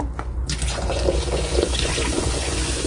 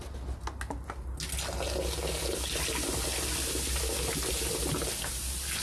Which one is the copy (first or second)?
first